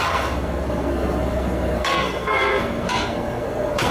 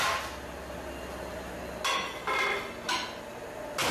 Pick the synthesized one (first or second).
first